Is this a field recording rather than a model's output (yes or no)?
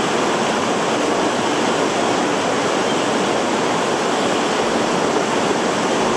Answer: yes